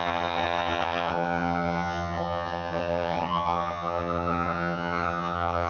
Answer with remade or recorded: remade